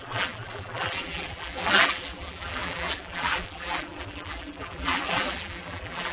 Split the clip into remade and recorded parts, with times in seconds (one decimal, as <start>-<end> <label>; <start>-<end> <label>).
0.0-6.1 remade